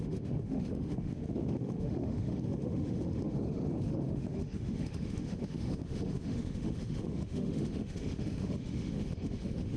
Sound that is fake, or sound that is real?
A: fake